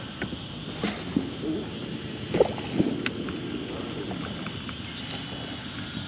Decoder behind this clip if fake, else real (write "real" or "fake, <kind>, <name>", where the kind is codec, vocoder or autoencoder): real